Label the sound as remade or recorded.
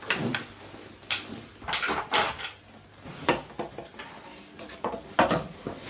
recorded